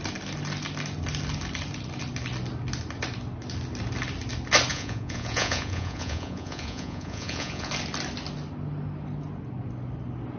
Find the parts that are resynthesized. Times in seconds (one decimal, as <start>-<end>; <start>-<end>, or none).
4.7-7.7